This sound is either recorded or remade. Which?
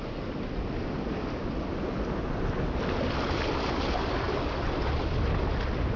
recorded